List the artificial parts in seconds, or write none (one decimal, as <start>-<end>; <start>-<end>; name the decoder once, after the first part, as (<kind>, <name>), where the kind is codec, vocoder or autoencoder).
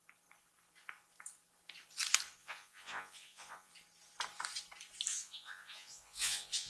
2.4-3.7 (vocoder, Vocos); 5.1-6.7